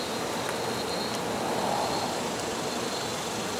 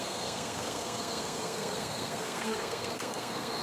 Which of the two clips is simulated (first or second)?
second